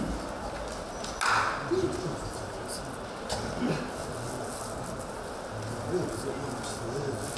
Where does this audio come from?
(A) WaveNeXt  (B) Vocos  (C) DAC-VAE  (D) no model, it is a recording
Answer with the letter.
D